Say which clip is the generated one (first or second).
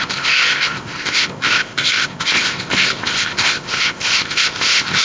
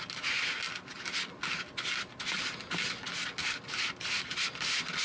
first